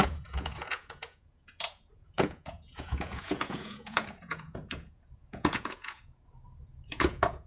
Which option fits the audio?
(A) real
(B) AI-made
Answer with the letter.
B